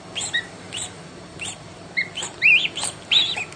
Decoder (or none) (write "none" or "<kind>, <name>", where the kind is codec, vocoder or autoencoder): none